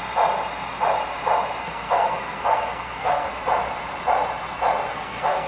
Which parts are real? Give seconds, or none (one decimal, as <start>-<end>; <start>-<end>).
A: 0.0-1.6; 3.3-4.9